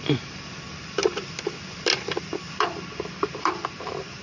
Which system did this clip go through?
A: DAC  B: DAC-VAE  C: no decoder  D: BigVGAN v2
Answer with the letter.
D